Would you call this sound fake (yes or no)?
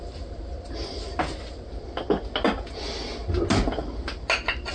no